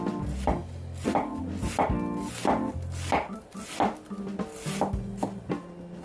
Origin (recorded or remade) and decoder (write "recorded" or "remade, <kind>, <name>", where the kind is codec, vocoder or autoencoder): recorded